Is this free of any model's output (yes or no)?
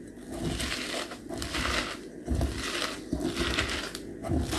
yes